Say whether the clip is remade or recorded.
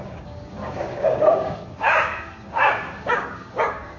remade